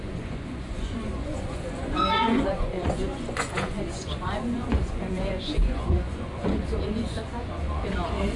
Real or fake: fake